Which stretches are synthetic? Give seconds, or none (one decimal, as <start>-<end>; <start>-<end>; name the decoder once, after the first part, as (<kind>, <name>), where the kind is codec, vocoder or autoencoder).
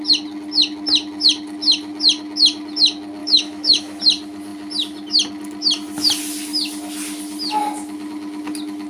3.2-4.0 (autoencoder, DAC-VAE)